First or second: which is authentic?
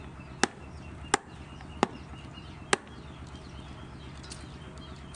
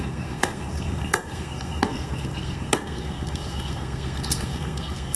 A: first